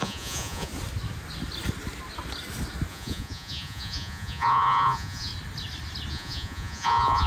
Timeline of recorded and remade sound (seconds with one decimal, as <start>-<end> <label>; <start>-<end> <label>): 0.0-0.7 remade; 0.7-2.9 recorded; 2.9-5.3 remade; 5.3-6.1 recorded; 6.1-7.3 remade